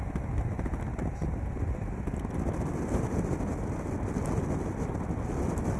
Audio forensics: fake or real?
real